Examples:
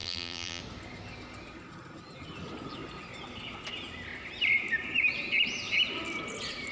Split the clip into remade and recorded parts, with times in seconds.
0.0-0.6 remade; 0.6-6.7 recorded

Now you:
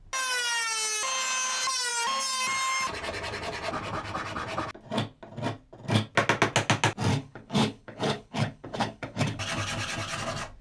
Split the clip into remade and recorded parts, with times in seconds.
0.0-7.1 recorded; 7.1-9.4 remade; 9.4-10.6 recorded

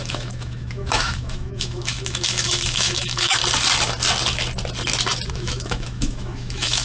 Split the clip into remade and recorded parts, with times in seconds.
0.0-3.4 remade; 3.4-5.3 recorded; 5.3-6.8 remade

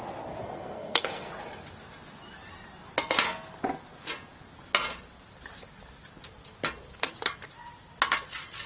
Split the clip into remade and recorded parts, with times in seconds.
0.0-0.4 recorded; 0.4-1.3 remade; 1.3-8.7 recorded